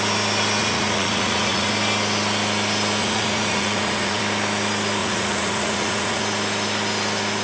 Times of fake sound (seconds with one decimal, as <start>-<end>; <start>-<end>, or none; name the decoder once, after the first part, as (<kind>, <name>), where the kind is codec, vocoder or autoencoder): 0.6-1.7 (vocoder, Vocos); 3.0-4.2; 5.0-6.2